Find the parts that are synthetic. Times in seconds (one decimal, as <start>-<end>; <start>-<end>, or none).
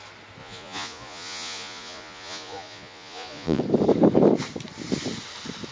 0.4-3.6